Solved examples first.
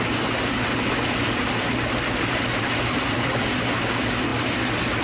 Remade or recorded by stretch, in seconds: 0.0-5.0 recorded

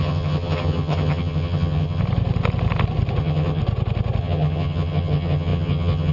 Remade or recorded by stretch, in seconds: 0.0-2.0 remade; 2.0-3.2 recorded; 3.2-3.6 remade; 3.6-4.2 recorded; 4.2-6.1 remade

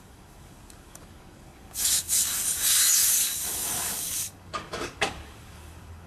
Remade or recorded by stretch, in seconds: 0.0-6.1 remade